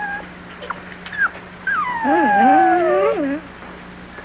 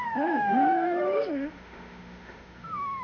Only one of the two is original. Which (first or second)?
first